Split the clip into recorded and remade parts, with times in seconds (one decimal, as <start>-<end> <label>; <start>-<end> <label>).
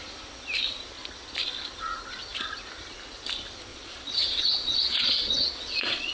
0.0-3.7 recorded; 3.7-6.1 remade